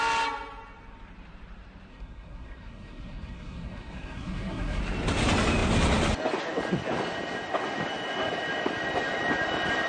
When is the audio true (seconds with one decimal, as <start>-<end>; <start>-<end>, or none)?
0.0-1.9; 4.8-9.9

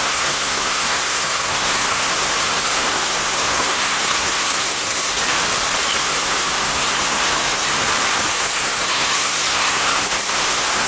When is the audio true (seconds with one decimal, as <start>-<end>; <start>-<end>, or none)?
5.2-6.0; 7.8-8.3

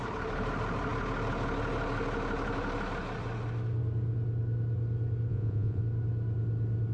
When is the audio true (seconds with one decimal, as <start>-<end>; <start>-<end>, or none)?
0.0-5.3; 5.8-6.9

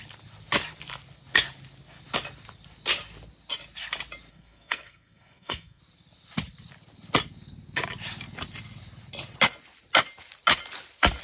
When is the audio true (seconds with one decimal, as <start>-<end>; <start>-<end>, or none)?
0.0-4.3; 5.8-11.2

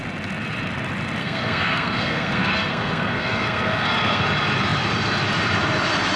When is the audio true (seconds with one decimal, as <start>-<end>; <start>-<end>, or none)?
0.0-1.2; 4.2-6.2

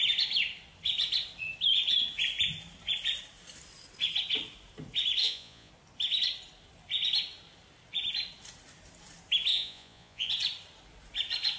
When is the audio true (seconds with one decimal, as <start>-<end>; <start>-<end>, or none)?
0.0-5.2; 5.7-9.5; 10.3-11.6

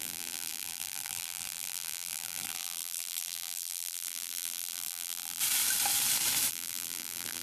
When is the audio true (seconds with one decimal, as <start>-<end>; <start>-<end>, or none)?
5.4-6.5